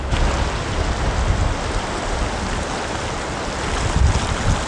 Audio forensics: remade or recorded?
recorded